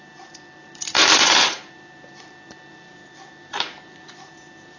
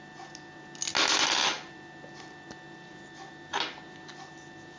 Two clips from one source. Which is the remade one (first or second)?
first